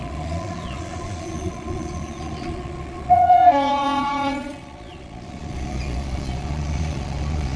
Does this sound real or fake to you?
fake